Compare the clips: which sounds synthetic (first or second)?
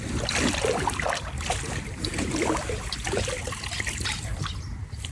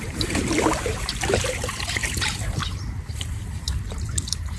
second